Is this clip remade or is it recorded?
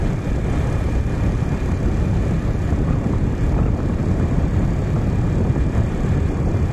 recorded